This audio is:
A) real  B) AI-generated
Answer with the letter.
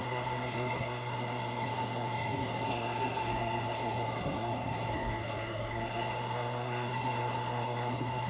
B